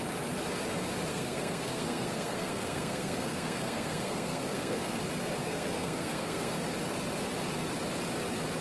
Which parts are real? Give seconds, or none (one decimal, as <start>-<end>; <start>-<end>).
0.0-1.1; 5.0-5.4; 6.6-8.6